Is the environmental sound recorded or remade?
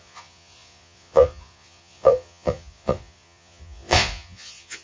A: remade